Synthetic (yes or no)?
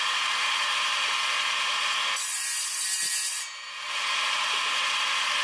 no